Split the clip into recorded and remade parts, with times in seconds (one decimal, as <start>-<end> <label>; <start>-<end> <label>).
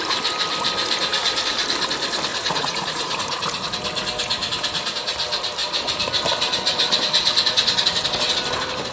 0.0-2.3 recorded; 2.3-3.7 remade; 3.7-8.9 recorded